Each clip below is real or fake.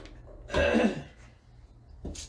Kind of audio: real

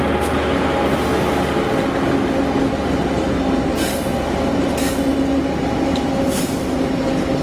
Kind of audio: real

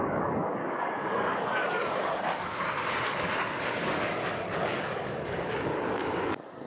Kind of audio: fake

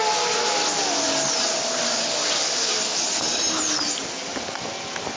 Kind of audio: real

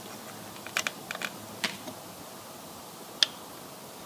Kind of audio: real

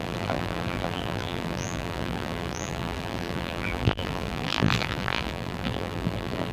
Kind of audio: fake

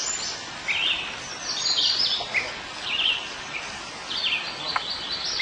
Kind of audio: real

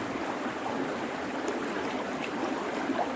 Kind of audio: real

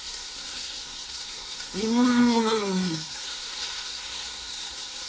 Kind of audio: fake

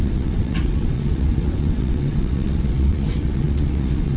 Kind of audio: fake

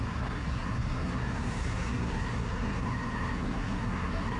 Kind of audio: fake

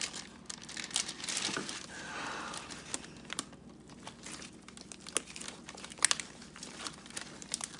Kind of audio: real